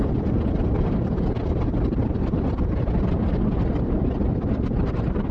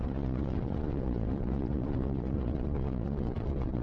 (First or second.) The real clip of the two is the first